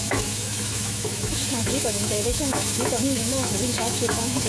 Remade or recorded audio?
remade